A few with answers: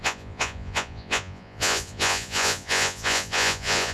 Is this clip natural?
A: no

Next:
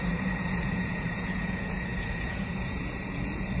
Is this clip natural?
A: no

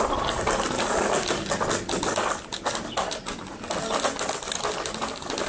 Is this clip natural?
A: yes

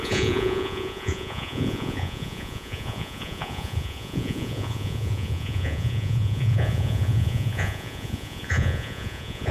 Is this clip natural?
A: no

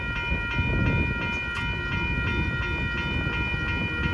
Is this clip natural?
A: yes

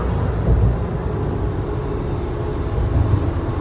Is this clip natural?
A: yes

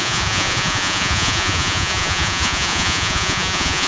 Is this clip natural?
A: no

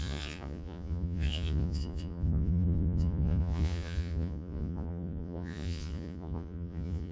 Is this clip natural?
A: no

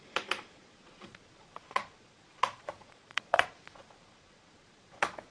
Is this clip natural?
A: no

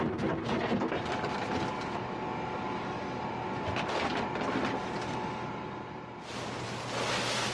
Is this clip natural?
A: yes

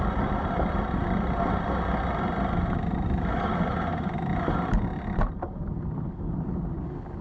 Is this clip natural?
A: yes